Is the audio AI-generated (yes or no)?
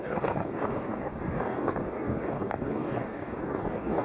yes